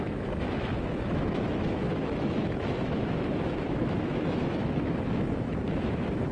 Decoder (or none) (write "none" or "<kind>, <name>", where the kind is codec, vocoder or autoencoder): autoencoder, DAC-VAE